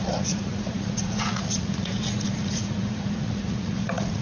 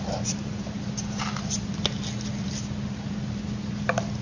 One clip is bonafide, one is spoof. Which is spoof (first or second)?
first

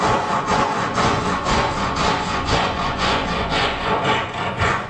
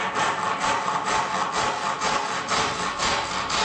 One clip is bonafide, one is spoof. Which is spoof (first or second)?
first